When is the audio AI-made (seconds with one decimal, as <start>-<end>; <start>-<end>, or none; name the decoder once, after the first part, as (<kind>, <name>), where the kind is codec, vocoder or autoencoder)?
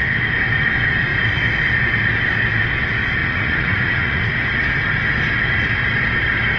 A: 3.2-4.2 (vocoder, Vocos)